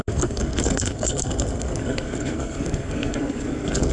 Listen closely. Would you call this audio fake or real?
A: fake